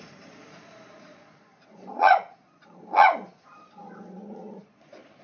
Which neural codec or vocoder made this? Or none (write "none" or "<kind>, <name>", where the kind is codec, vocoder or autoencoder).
vocoder, Vocos